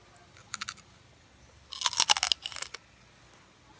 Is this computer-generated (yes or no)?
no